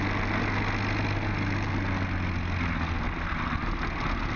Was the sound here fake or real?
real